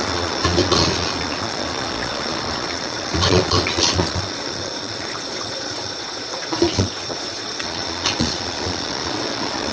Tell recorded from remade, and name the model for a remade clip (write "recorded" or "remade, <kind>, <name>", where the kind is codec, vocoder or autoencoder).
remade, vocoder, Vocos